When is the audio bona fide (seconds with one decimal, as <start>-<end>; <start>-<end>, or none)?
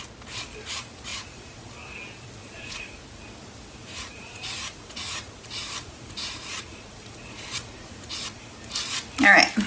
0.0-1.1; 1.7-2.4; 3.0-3.8; 8.5-9.7